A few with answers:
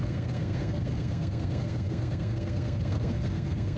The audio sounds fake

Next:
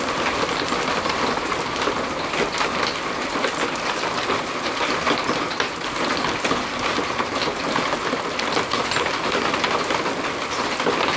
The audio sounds real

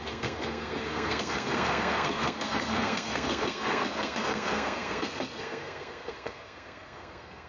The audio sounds fake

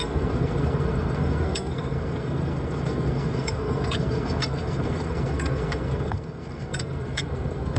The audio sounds fake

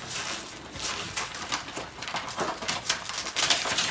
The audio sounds real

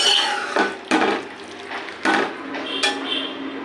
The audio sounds real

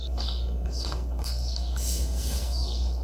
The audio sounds fake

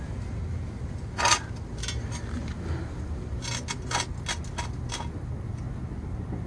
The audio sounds real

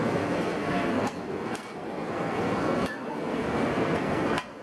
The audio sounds fake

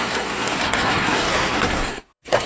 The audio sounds fake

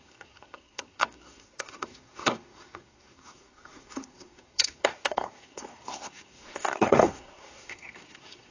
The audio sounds fake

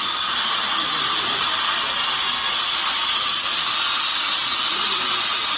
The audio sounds real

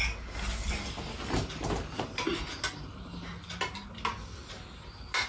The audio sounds real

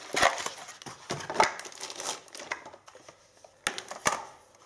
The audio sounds real